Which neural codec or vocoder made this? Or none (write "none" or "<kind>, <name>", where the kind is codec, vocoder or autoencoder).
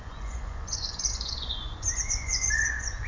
vocoder, Vocos